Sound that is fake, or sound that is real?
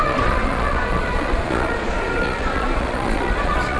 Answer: fake